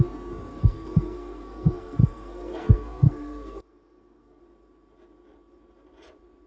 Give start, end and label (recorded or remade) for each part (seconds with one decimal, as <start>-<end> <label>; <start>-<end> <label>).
0.0-0.5 recorded; 0.5-4.4 remade; 4.4-6.5 recorded